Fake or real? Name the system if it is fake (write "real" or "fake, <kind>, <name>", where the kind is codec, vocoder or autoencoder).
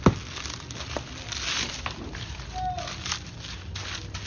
real